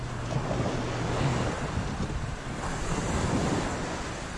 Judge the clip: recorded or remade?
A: recorded